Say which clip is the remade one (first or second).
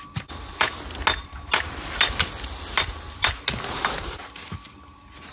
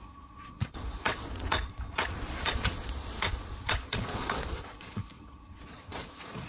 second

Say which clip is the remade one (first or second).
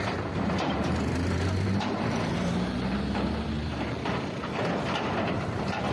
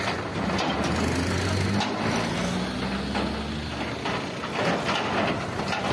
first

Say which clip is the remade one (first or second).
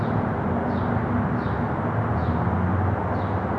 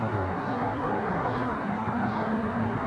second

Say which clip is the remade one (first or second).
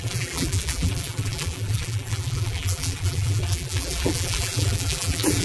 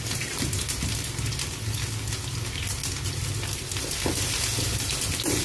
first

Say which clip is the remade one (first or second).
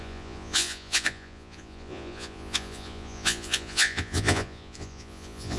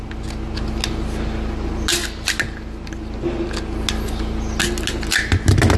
first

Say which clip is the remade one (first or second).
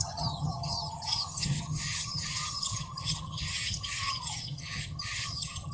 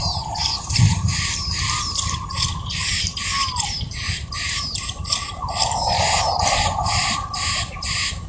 first